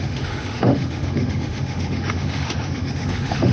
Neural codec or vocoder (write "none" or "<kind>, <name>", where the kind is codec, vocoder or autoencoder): autoencoder, DAC-VAE